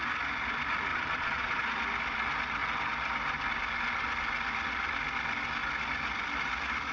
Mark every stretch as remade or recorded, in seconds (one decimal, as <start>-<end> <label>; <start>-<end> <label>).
0.0-0.9 recorded; 0.9-1.6 remade; 1.6-6.9 recorded